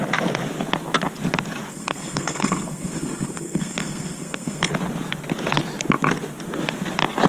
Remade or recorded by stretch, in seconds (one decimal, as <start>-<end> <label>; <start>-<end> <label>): 0.0-1.7 recorded; 1.7-4.7 remade; 4.7-7.3 recorded